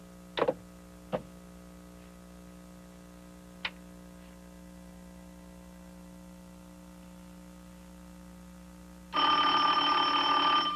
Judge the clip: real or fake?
real